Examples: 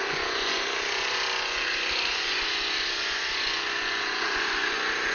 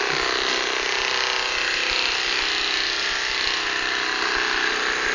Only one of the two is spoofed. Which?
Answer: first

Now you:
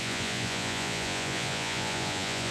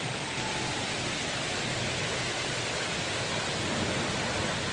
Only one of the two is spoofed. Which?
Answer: first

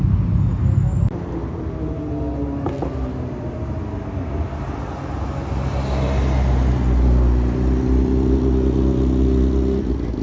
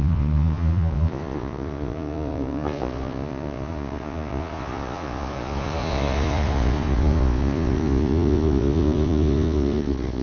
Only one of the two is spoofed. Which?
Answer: second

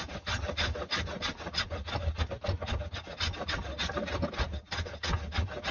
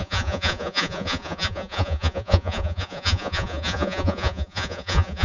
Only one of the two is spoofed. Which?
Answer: second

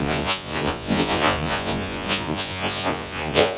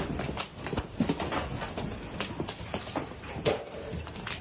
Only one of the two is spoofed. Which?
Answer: first